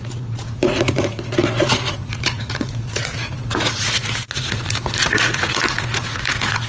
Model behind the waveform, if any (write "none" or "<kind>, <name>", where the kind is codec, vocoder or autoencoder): vocoder, Vocos